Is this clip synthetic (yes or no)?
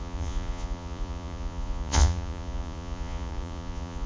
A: yes